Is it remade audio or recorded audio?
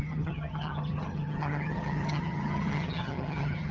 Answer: remade